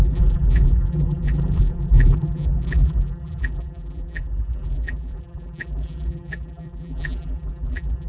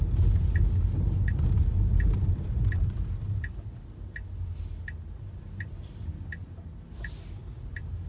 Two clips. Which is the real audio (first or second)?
second